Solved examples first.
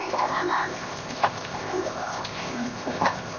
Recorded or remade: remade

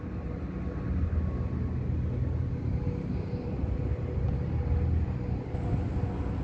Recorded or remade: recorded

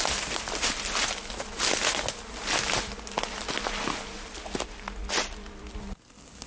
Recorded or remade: recorded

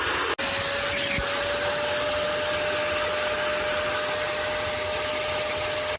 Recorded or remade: recorded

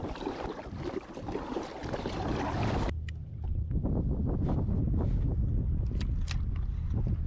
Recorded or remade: recorded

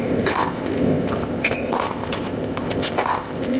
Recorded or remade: remade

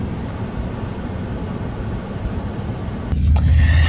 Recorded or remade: recorded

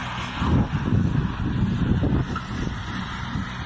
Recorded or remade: recorded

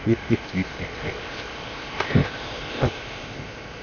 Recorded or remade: remade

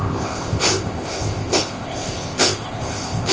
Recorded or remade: remade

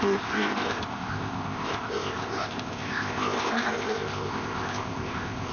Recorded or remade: remade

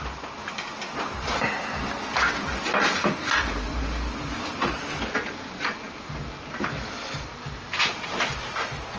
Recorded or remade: recorded